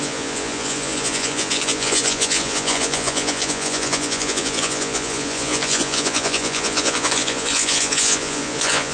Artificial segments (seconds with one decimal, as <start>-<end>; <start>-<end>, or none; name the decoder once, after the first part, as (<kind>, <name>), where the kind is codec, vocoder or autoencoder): 0.0-8.9 (vocoder, Vocos)